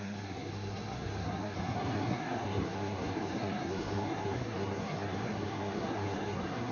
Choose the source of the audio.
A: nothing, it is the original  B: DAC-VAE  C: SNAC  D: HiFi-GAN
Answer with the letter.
C